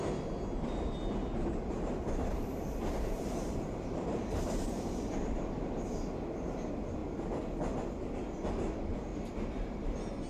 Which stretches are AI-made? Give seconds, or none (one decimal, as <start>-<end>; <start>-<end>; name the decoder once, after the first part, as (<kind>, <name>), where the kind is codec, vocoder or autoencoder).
2.3-5.1 (vocoder, BigVGAN v2); 9.1-9.9